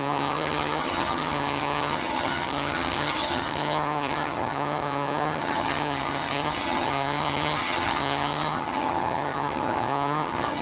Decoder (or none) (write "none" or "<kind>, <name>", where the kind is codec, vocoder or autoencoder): vocoder, HiFi-GAN